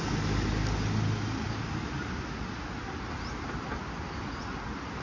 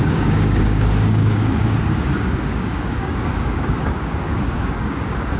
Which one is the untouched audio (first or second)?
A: first